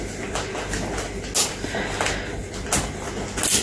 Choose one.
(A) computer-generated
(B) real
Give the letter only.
B